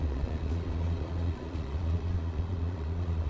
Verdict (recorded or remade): remade